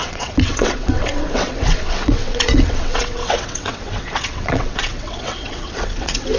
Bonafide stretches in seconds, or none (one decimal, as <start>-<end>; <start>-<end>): none